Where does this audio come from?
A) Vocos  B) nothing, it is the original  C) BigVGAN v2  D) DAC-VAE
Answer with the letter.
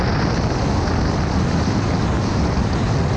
B